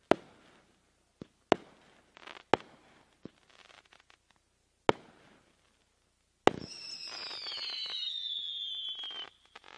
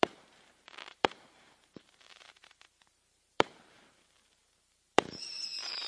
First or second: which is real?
first